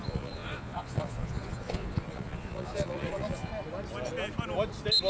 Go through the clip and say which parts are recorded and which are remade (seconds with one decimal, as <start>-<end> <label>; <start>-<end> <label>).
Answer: 0.0-3.5 remade; 3.5-5.1 recorded